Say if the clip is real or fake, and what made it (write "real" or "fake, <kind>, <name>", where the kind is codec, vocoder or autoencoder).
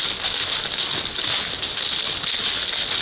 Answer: real